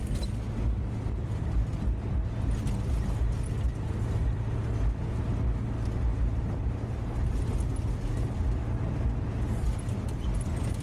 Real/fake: real